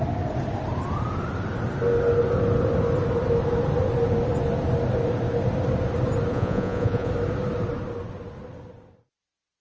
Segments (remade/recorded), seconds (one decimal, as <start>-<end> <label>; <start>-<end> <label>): 0.0-6.3 recorded; 6.3-7.1 remade; 7.1-9.6 recorded